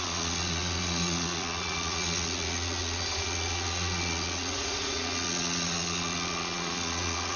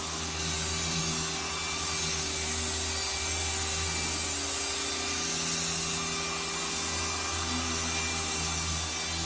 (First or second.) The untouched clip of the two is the second